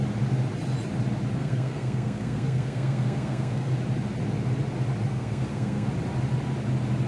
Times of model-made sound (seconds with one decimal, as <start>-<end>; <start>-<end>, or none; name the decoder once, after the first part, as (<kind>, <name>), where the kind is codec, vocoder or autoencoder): 1.4-3.7 (codec, SNAC); 5.1-5.9